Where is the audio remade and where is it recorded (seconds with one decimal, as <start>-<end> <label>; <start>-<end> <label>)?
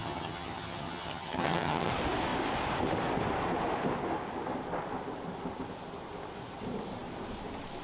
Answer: 0.0-1.9 remade; 1.9-7.8 recorded